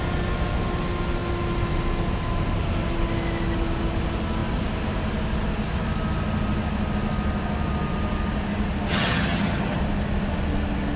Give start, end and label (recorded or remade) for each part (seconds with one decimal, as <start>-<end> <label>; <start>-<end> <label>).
0.0-8.9 recorded; 8.9-9.8 remade; 9.8-11.0 recorded